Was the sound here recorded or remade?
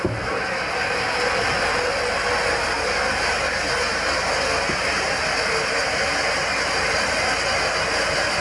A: recorded